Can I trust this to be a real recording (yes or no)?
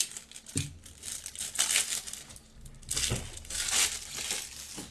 yes